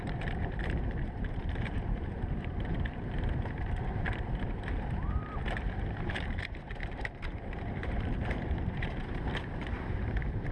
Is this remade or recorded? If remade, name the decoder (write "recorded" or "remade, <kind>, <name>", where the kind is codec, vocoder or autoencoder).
remade, vocoder, BigVGAN v2